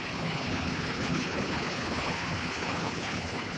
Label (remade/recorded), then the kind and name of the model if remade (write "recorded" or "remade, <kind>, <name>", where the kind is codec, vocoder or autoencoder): remade, codec, HILCodec